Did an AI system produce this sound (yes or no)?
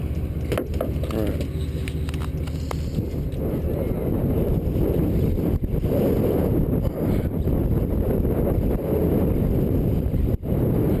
no